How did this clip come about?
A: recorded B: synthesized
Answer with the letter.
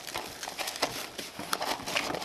A